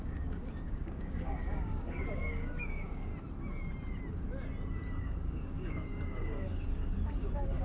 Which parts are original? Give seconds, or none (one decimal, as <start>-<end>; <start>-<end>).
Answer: 3.1-5.0